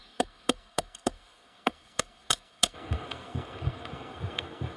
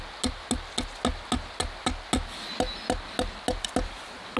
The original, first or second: second